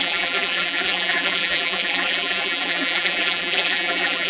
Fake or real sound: fake